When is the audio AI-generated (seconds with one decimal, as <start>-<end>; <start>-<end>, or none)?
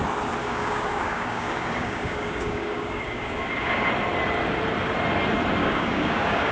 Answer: 0.4-3.9; 5.6-6.5